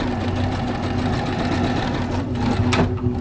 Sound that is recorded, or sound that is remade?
recorded